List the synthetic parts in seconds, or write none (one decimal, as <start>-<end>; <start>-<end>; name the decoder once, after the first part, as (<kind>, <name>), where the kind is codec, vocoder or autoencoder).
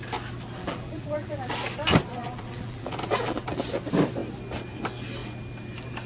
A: 0.6-1.5 (vocoder, BigVGAN v2); 2.2-3.6